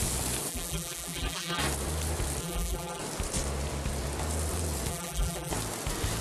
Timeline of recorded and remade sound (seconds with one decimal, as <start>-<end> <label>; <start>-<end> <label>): 0.0-0.5 recorded; 0.5-1.6 remade; 1.6-2.4 recorded; 2.4-3.0 remade; 3.0-4.9 recorded; 4.9-5.5 remade; 5.5-6.2 recorded